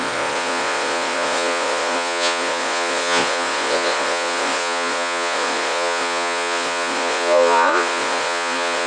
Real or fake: fake